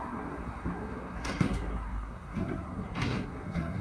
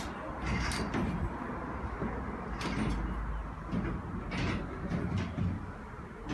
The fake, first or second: first